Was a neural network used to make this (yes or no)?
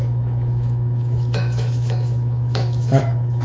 yes